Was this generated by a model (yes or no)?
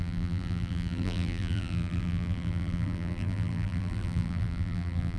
yes